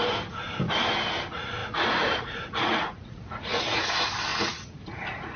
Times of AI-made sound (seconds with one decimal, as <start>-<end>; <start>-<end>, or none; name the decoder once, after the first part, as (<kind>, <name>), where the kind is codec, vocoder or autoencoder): 1.6-3.9 (vocoder, Vocos); 4.3-5.4